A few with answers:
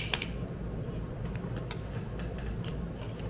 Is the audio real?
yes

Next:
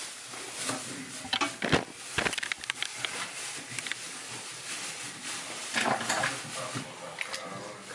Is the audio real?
yes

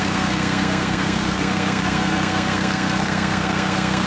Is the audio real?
no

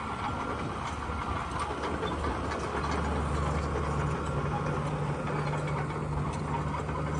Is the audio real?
yes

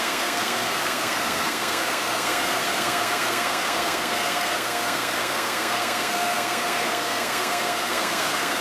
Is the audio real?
no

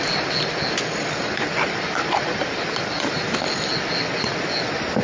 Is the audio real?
yes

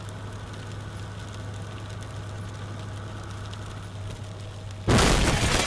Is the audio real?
yes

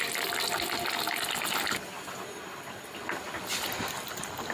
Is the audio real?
yes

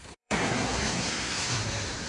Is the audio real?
no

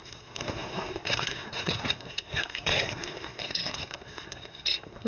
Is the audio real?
no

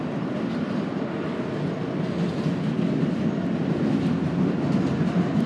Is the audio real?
yes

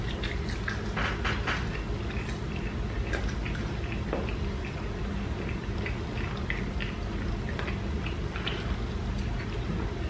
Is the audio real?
yes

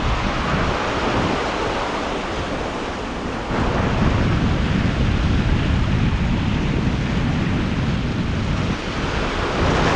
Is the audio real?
yes